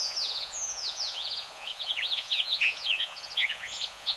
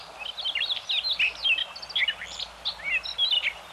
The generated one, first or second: first